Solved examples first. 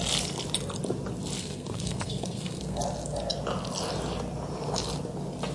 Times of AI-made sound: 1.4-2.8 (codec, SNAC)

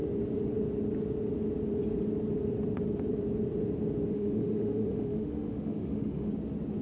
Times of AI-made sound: 4.1-6.3 (autoencoder, DAC-VAE)